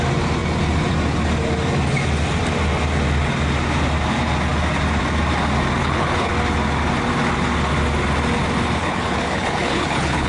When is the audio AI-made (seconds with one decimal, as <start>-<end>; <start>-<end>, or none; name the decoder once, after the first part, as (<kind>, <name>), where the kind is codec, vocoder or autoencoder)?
5.8-6.3 (codec, HILCodec); 8.8-10.3